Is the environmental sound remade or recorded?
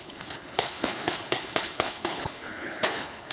remade